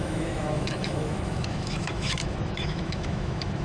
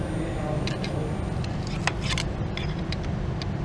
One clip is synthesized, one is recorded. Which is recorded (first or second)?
second